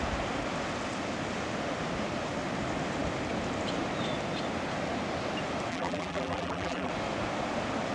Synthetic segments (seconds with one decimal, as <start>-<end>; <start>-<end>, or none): 5.7-6.9

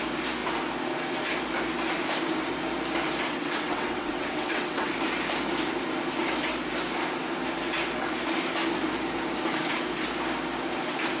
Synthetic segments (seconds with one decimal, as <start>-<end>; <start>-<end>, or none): 3.3-4.9